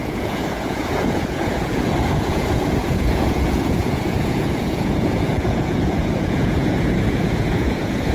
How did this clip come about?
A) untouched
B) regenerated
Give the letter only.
B